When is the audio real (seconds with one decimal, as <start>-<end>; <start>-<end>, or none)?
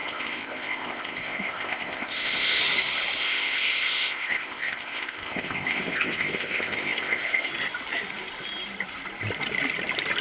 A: 2.6-3.2; 7.5-10.2